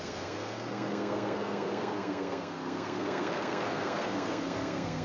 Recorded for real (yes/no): no